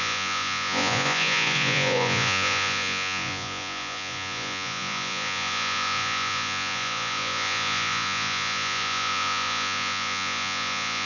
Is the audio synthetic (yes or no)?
yes